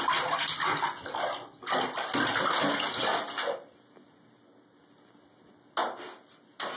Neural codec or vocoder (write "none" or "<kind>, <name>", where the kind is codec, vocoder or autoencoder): none